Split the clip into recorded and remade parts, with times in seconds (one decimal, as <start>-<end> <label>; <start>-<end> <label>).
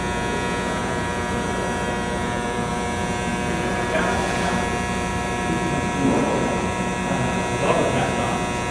0.0-0.8 recorded; 0.8-2.7 remade; 2.7-3.3 recorded; 3.3-4.0 remade; 4.0-5.1 recorded; 5.1-7.4 remade; 7.4-8.7 recorded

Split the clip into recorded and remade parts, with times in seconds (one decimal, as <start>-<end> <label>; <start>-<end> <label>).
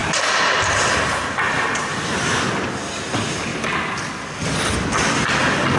0.0-2.4 remade; 2.4-5.8 recorded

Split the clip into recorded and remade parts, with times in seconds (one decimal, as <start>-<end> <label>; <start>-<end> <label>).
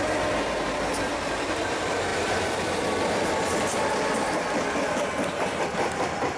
0.0-1.1 recorded; 1.1-1.6 remade; 1.6-2.1 recorded; 2.1-5.6 remade; 5.6-6.4 recorded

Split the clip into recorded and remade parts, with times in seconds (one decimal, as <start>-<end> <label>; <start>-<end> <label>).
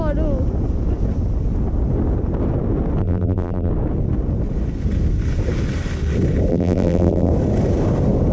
0.0-3.0 recorded; 3.0-3.7 remade; 3.7-6.5 recorded; 6.5-7.3 remade; 7.3-8.3 recorded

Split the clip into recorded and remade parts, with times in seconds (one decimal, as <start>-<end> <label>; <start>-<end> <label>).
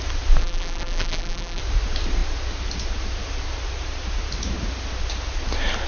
0.0-0.4 recorded; 0.4-1.6 remade; 1.6-5.9 recorded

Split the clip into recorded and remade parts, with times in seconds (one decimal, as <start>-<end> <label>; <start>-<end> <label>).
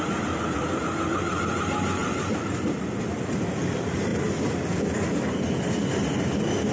0.0-2.0 remade; 2.0-3.1 recorded; 3.1-4.1 remade; 4.1-6.7 recorded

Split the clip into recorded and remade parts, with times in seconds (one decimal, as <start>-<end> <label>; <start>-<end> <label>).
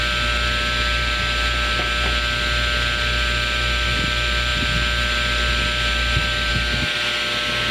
0.0-7.7 recorded